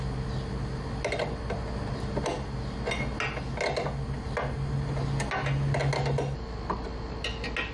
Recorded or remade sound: recorded